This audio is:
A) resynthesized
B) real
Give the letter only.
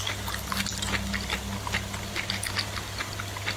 B